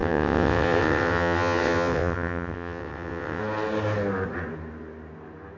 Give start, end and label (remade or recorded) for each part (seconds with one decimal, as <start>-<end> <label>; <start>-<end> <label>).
0.0-3.4 remade; 3.4-5.6 recorded